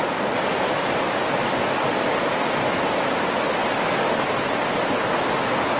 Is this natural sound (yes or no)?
yes